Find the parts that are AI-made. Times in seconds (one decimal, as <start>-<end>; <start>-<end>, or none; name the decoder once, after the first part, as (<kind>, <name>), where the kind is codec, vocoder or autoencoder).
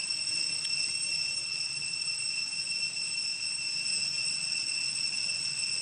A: 0.0-0.9 (vocoder, WaveNeXt); 1.4-2.1; 4.2-5.8